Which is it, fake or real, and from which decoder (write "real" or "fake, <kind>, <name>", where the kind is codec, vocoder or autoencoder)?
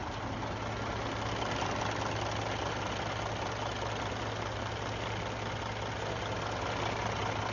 real